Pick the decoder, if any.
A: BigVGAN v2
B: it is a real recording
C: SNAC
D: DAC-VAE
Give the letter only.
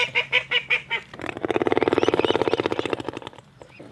A